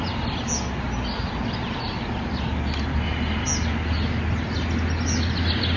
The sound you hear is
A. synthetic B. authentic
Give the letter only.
B